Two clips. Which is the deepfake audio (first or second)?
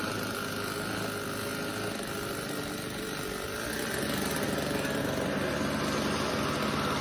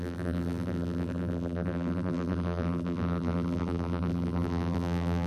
second